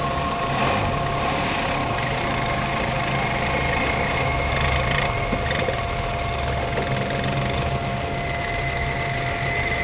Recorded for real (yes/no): no